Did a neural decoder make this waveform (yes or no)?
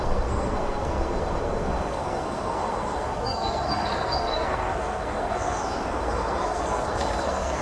yes